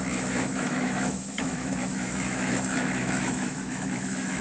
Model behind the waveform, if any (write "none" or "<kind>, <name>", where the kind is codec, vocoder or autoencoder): autoencoder, DAC-VAE